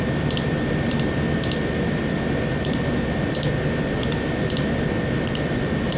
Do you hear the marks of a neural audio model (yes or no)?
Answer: no